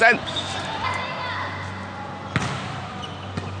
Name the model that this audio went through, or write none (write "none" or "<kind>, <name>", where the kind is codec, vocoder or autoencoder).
none